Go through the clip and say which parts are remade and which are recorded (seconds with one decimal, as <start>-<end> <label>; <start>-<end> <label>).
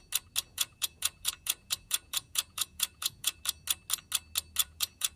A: 0.0-0.5 recorded; 0.5-3.4 remade; 3.4-4.6 recorded; 4.6-5.2 remade